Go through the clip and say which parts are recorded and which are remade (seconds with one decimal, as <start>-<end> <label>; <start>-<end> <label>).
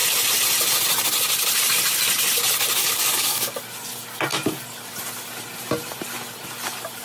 0.0-2.8 recorded; 2.8-3.6 remade; 3.6-7.0 recorded